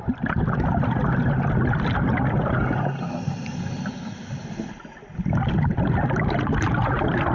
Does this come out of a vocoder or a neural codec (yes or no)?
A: no